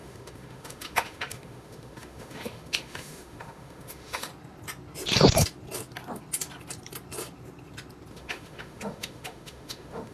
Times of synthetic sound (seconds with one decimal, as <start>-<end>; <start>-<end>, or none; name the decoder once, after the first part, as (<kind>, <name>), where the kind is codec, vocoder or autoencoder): 0.0-4.3 (autoencoder, DAC-VAE); 8.1-10.1